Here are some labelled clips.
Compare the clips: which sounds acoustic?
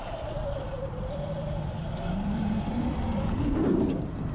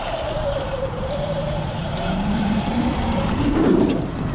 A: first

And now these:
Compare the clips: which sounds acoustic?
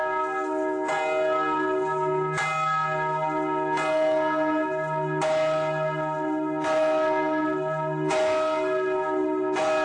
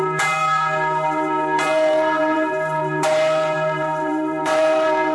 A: first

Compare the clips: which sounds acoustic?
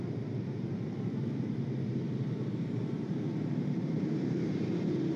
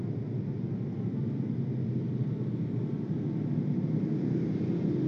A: second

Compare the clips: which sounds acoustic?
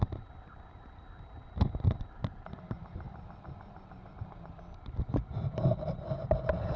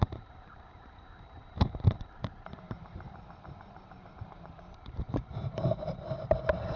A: first